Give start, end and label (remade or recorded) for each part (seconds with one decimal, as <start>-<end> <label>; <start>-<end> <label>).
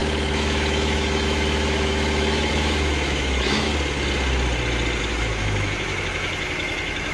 0.0-3.7 remade; 3.7-5.0 recorded; 5.0-7.1 remade